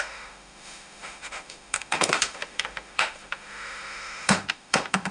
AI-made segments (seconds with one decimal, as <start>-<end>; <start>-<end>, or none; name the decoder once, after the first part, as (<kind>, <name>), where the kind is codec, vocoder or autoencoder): 0.0-5.1 (autoencoder, DAC-VAE)